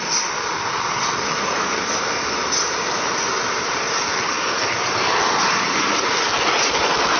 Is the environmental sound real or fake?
real